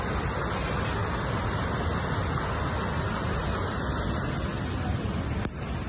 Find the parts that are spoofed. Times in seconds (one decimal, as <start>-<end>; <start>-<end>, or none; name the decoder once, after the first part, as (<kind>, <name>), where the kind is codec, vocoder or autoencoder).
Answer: none